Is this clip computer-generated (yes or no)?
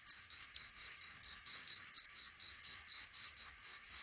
yes